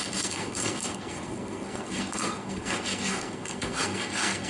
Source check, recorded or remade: remade